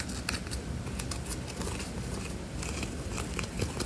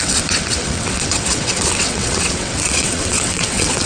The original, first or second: first